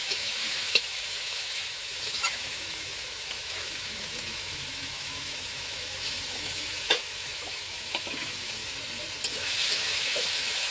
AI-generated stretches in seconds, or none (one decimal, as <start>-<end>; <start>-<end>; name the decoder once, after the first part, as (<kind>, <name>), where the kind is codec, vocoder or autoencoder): 0.0-8.6 (autoencoder, DAC-VAE); 9.3-10.7